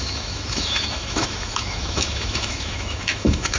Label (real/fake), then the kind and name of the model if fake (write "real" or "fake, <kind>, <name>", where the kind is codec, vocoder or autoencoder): fake, autoencoder, DAC-VAE